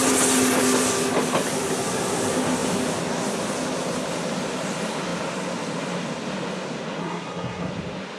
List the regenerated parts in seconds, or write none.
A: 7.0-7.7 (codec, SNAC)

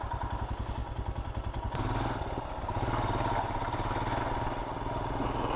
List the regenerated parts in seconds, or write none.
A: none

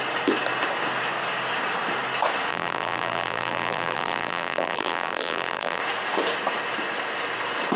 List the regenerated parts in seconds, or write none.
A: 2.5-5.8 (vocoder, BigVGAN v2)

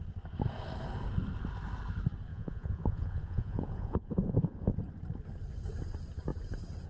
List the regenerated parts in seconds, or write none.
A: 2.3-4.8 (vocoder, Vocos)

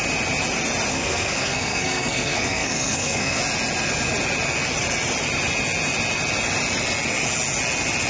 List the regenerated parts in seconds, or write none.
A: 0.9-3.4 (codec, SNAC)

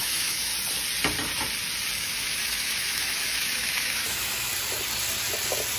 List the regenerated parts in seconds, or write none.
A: 0.0-0.5 (autoencoder, DAC-VAE); 2.0-4.5

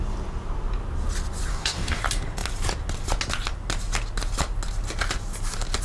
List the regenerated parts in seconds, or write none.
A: 1.5-2.0 (codec, DAC)

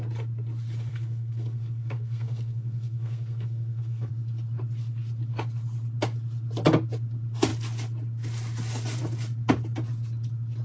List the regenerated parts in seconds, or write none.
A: 0.9-4.1 (codec, SNAC)